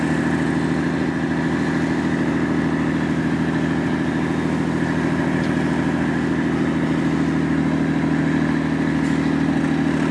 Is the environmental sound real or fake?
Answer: real